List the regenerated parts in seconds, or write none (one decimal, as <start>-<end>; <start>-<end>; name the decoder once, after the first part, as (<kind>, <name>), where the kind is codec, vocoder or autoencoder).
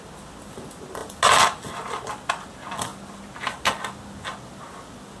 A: none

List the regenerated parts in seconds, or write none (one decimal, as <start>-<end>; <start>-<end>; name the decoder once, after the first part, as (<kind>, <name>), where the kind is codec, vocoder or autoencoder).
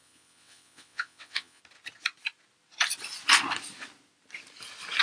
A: 0.0-1.6 (vocoder, WaveNeXt)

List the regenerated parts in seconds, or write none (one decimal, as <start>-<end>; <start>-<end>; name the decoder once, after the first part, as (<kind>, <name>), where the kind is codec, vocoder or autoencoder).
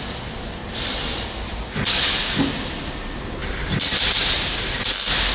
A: none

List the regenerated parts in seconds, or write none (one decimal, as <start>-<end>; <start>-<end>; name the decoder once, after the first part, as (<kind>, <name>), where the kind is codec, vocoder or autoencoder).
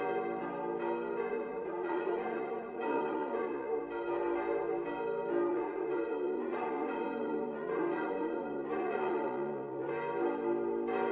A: 1.3-3.8 (vocoder, Vocos); 5.5-9.9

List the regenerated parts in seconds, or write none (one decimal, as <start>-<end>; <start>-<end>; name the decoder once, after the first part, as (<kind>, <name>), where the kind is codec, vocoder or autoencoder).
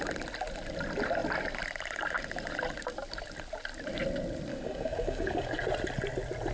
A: 4.5-5.6 (codec, DAC)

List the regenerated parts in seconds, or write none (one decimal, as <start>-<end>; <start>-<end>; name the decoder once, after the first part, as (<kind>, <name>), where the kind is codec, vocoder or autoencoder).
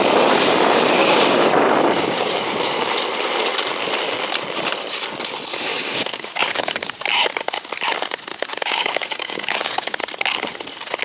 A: 1.0-2.9 (codec, DAC); 5.7-6.9; 8.3-10.0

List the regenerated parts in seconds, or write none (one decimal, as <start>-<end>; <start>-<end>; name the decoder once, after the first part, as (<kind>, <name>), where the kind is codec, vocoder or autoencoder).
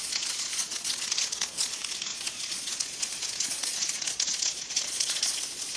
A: 0.0-5.8 (vocoder, Vocos)